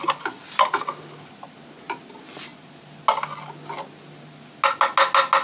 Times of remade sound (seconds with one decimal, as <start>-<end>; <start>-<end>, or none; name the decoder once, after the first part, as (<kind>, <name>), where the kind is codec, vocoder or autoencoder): none